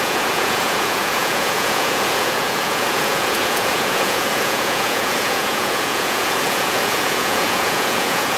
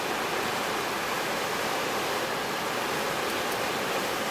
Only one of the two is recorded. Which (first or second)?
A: second